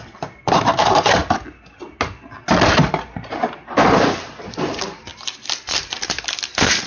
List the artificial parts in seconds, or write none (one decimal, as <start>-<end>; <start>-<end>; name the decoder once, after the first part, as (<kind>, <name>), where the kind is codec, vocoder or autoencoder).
0.0-1.2 (vocoder, BigVGAN v2); 4.4-6.9